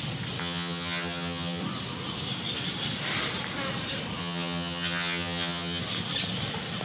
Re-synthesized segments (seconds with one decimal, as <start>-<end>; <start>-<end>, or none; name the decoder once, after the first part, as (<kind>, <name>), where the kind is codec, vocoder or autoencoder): 0.4-1.6 (vocoder, HiFi-GAN); 4.2-5.8